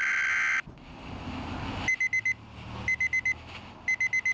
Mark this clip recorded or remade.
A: recorded